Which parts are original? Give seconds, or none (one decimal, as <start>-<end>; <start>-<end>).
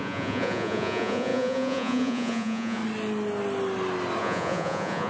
2.8-4.2